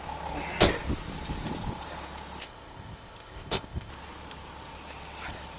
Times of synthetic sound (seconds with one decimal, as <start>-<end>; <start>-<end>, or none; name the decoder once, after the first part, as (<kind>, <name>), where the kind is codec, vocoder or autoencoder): 2.4-3.9 (codec, ZipCodec)